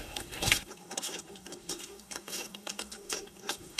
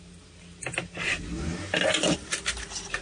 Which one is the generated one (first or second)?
first